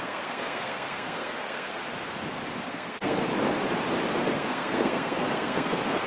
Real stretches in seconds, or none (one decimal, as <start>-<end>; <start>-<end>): 1.8-2.7; 3.3-4.3

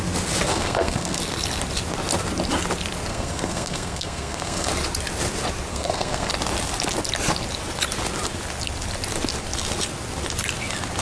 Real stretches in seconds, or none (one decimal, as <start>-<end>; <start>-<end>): 0.0-0.5; 1.2-3.1; 4.7-5.7; 6.3-11.0

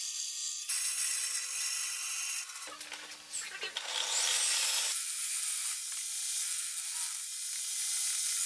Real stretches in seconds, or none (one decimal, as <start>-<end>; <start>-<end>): 0.0-8.5

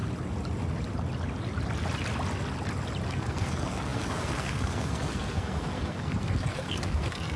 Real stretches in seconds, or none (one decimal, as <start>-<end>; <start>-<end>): 0.0-3.1

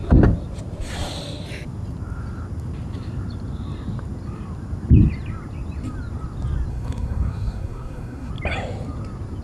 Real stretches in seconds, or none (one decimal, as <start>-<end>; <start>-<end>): 0.0-6.7; 8.3-9.4

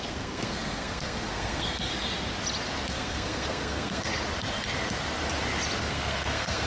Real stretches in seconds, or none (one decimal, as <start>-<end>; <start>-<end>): 1.9-2.9; 4.1-5.8

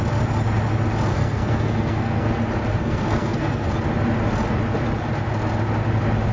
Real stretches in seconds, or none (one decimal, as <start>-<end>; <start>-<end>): 0.0-1.1; 2.3-2.7; 3.7-6.3

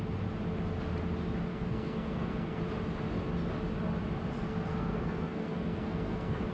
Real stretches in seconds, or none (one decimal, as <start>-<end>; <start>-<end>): 0.0-1.5; 2.6-4.4